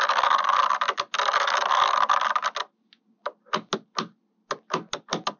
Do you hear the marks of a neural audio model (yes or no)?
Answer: no